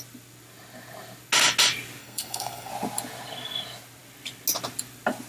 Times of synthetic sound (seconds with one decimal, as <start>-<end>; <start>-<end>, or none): 2.0-2.7